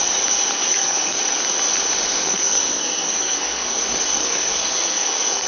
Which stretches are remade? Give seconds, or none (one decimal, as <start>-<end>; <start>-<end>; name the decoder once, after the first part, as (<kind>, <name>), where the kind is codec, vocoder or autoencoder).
0.7-1.2 (codec, SNAC); 2.2-3.8; 4.2-5.5